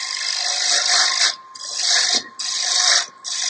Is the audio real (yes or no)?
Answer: yes